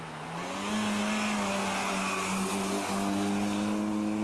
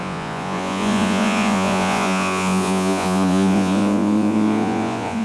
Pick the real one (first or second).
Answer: first